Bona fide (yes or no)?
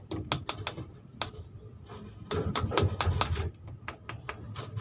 yes